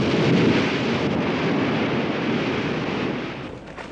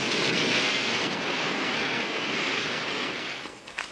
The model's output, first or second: second